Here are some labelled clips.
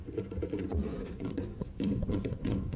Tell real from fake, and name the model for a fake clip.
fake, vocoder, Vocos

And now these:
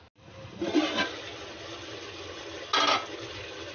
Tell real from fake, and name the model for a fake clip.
real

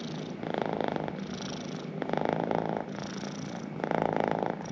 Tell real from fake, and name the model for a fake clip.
real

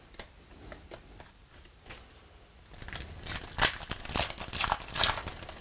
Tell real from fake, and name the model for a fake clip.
real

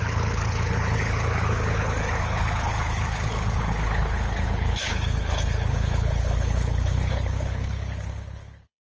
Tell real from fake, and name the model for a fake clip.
fake, codec, HILCodec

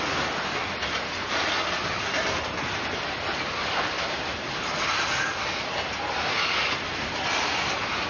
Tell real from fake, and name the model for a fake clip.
real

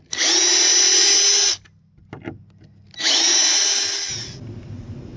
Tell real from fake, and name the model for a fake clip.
real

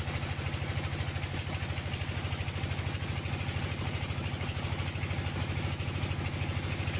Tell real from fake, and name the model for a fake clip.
real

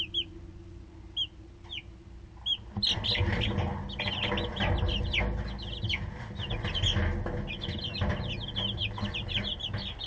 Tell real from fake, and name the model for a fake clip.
real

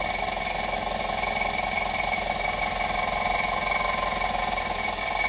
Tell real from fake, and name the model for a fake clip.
real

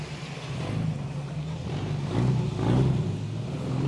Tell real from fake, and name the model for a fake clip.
real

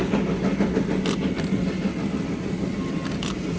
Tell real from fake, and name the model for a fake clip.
real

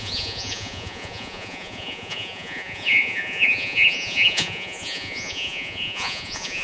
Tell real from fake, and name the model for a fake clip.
fake, vocoder, Vocos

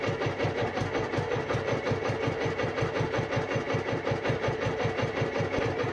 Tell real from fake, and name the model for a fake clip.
real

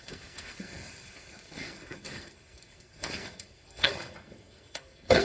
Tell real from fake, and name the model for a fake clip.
fake, codec, SNAC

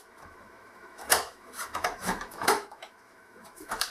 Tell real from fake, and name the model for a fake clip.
fake, autoencoder, DAC-VAE